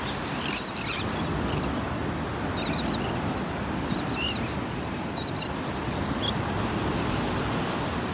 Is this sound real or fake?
real